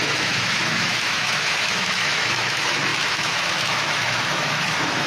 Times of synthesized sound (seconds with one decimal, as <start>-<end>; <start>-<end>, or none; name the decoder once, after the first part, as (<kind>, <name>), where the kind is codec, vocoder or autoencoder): 0.0-5.1 (autoencoder, DAC-VAE)